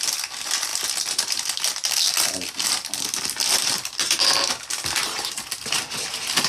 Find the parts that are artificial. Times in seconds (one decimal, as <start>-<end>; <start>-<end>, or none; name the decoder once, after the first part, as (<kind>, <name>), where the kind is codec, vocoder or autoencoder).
none